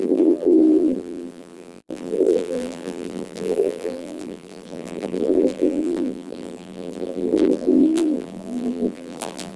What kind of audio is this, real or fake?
fake